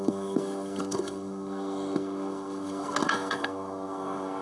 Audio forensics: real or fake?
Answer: fake